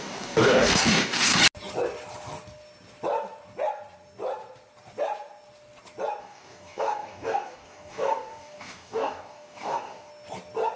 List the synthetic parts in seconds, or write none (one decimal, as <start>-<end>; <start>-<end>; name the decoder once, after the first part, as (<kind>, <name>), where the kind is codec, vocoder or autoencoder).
0.0-1.4 (codec, DAC); 6.2-10.1